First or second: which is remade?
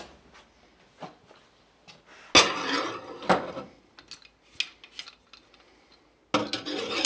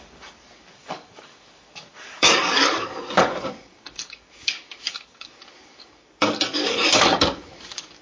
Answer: second